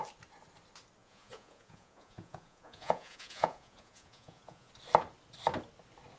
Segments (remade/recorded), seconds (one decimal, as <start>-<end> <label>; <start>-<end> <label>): 0.0-1.0 recorded; 1.0-4.7 remade; 4.7-6.2 recorded